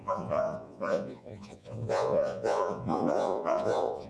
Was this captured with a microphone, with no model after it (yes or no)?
no